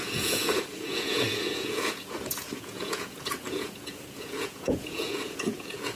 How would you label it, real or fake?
fake